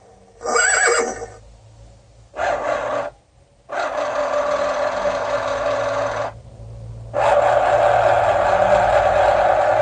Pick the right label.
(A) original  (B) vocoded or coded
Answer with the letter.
A